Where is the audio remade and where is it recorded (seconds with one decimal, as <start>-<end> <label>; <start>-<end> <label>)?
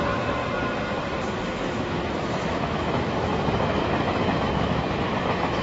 0.0-0.4 remade; 0.4-1.6 recorded; 1.6-5.6 remade